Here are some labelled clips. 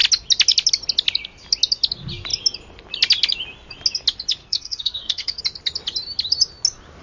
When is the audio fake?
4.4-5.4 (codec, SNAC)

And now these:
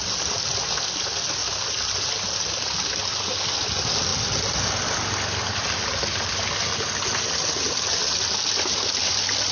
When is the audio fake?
none

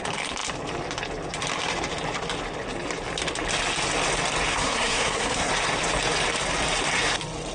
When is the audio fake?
4.5-5.5 (codec, SNAC)

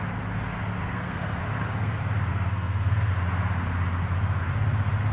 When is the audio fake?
0.8-1.9 (codec, SNAC); 2.3-3.1

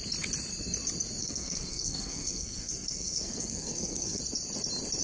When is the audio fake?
1.2-4.2 (codec, SNAC)

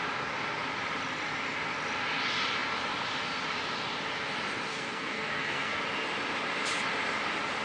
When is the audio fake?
4.7-5.8 (codec, SNAC)

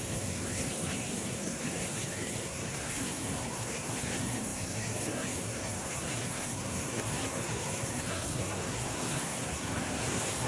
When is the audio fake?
0.0-10.5 (codec, SNAC)

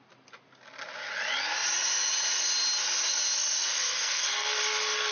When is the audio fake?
3.7-4.6 (codec, SNAC)